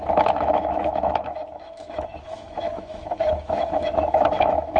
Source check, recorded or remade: remade